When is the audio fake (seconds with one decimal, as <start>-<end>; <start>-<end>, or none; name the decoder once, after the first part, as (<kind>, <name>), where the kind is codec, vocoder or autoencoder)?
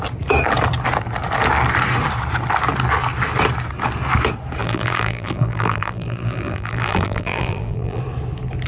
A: 4.6-8.0 (vocoder, BigVGAN v2)